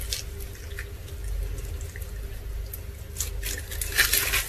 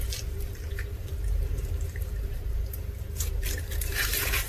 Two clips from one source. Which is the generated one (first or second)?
second